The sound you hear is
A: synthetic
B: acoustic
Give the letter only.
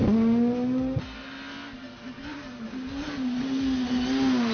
B